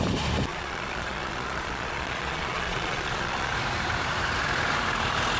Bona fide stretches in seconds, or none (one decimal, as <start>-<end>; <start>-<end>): 0.0-0.5; 3.5-5.4